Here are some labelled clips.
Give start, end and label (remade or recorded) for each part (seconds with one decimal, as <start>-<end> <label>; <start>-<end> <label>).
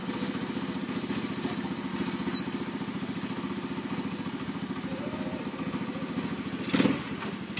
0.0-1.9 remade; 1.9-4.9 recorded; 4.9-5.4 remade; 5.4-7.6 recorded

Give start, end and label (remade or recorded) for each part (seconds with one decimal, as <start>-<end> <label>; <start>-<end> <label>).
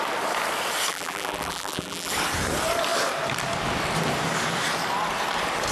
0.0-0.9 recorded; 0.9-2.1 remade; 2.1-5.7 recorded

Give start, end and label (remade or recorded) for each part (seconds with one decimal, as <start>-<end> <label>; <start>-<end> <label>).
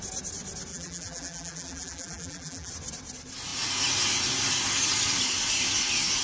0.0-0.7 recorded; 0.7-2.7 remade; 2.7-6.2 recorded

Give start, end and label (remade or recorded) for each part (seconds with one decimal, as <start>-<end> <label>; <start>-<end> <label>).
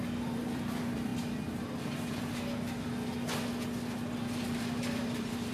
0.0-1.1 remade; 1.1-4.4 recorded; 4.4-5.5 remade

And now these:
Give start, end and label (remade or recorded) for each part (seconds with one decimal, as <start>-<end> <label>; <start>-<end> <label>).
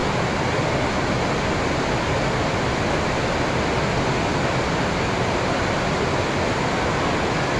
0.0-7.6 recorded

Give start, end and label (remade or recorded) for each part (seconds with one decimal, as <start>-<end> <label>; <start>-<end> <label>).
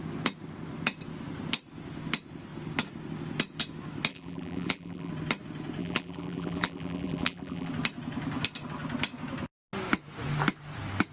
0.0-4.1 recorded; 4.1-5.1 remade; 5.1-5.8 recorded; 5.8-7.7 remade; 7.7-11.1 recorded